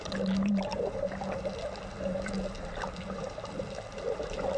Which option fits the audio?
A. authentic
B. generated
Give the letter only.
A